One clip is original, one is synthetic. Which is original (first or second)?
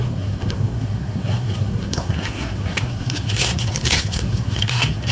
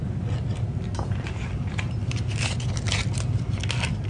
second